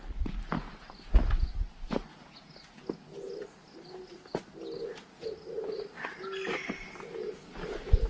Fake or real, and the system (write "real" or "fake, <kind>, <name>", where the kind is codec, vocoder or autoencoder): real